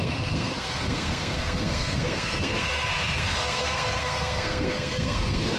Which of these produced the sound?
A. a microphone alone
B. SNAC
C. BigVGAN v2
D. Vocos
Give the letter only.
B